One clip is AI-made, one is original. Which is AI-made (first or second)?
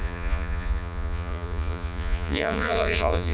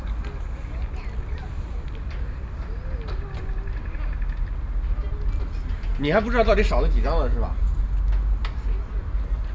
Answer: first